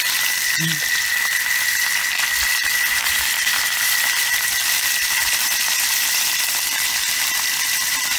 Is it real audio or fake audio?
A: fake